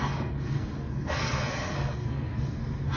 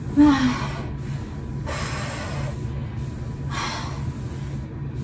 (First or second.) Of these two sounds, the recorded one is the second